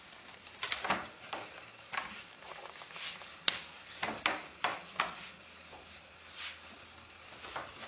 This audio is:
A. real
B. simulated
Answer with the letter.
A